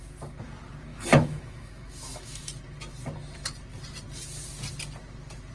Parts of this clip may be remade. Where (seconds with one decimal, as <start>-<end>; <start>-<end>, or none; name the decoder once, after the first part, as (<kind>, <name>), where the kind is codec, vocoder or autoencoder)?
0.9-2.5 (autoencoder, DAC-VAE)